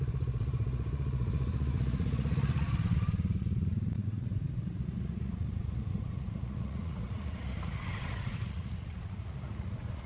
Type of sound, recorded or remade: remade